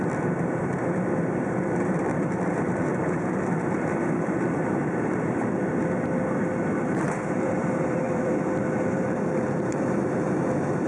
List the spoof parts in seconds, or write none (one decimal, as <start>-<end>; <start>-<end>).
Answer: 0.6-5.7; 6.8-10.9